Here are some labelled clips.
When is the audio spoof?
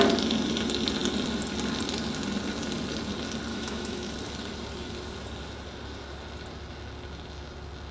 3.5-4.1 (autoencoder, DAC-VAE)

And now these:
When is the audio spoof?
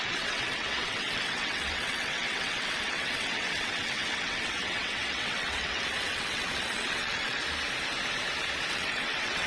0.0-7.4 (vocoder, WaveNeXt); 8.7-9.5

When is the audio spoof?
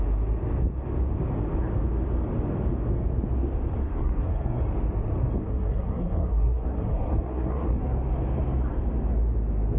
3.8-4.6 (codec, SNAC); 5.4-7.8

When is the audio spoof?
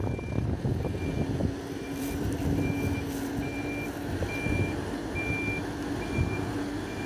1.4-2.4 (vocoder, BigVGAN v2)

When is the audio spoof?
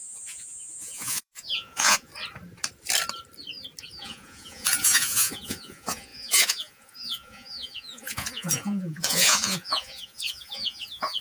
0.0-2.1 (vocoder, Vocos); 3.8-11.2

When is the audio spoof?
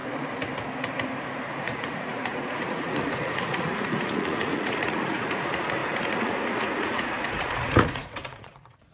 1.6-8.9 (vocoder, Vocos)